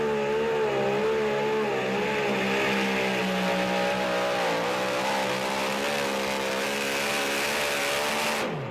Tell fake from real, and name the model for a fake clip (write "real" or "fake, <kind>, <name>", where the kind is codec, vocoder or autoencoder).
real